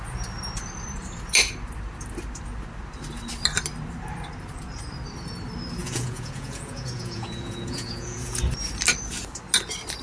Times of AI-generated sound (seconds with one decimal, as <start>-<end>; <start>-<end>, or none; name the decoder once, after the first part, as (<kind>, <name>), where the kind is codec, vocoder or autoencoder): 5.8-8.4 (vocoder, Vocos)